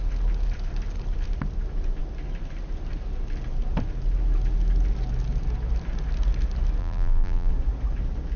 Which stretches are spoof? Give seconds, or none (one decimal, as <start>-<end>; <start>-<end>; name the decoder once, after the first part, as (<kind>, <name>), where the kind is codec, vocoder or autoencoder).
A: 6.8-7.5 (vocoder, BigVGAN v2)